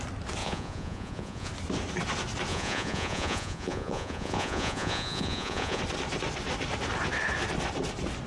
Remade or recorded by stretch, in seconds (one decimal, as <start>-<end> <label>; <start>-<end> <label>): 0.0-0.4 recorded; 0.4-1.5 remade; 1.5-2.5 recorded; 2.5-5.8 remade; 5.8-8.3 recorded